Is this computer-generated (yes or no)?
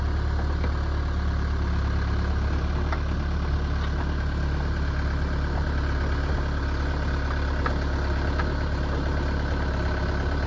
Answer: no